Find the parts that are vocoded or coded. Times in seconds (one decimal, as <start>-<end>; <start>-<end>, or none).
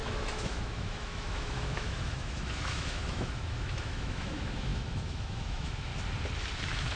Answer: 0.0-5.9